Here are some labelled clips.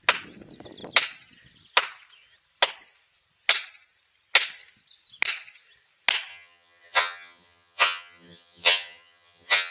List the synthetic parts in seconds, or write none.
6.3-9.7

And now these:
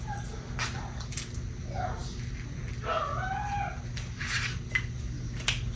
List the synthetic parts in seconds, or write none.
none

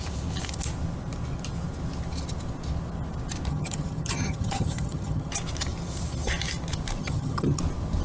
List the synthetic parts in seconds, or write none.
3.5-5.3; 7.0-7.6

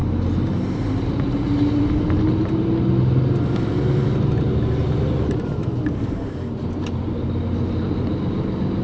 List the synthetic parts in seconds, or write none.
none

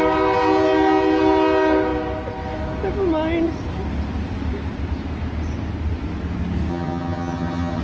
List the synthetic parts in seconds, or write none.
6.7-7.8